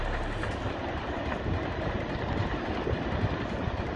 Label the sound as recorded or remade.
recorded